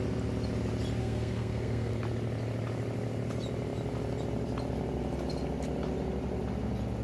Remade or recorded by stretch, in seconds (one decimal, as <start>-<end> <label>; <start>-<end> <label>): 0.0-1.0 recorded; 1.0-1.9 remade; 1.9-7.0 recorded